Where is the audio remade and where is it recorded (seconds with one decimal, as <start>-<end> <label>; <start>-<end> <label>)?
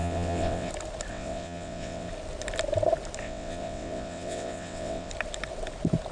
0.0-0.7 remade; 0.7-1.1 recorded; 1.1-2.1 remade; 2.1-3.2 recorded; 3.2-5.1 remade; 5.1-6.1 recorded